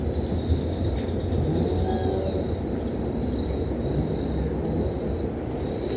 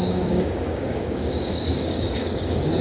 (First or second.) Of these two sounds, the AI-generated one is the second